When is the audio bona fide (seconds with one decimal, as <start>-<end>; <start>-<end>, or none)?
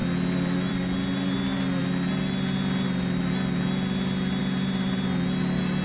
0.0-5.8